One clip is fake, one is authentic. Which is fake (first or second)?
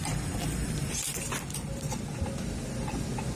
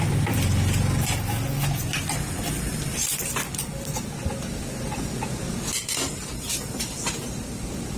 first